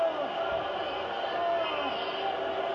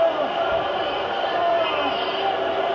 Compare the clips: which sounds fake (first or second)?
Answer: second